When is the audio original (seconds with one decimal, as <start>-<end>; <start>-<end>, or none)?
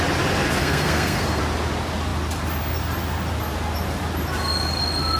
0.0-0.6; 1.4-5.2